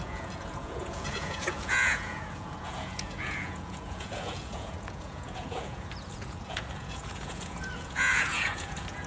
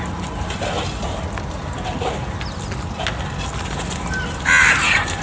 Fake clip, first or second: first